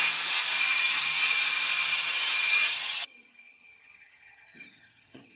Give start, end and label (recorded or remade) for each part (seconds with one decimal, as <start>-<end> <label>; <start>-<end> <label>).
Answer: 0.0-0.7 recorded; 0.7-1.2 remade; 1.2-1.9 recorded; 1.9-5.4 remade